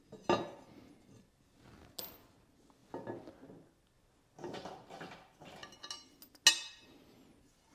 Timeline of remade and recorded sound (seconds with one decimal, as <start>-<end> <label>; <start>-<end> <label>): 0.0-7.7 recorded